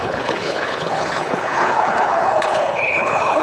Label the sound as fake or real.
fake